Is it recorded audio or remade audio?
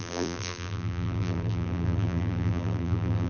remade